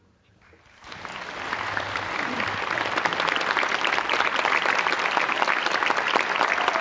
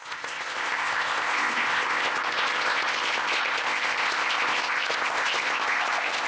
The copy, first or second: second